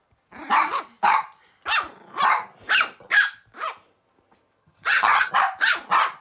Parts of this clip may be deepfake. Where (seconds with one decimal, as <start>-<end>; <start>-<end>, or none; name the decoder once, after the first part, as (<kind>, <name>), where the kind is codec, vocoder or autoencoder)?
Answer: 4.6-5.3 (vocoder, HiFi-GAN)